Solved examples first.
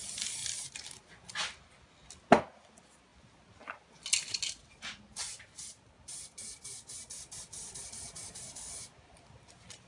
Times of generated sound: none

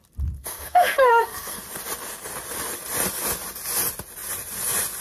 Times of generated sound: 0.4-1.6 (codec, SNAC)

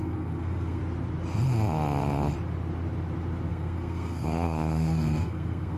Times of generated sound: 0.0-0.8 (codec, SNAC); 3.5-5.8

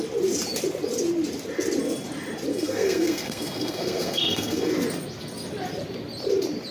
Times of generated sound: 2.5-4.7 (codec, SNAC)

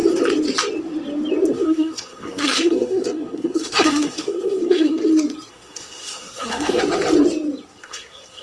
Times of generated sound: 1.5-5.0 (codec, SNAC); 5.5-6.8; 7.8-8.4

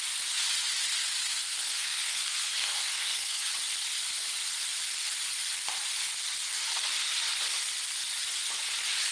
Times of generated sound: 1.2-3.4 (codec, SNAC)